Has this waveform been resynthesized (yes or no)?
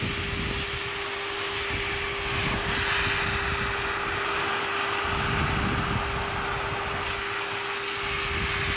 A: no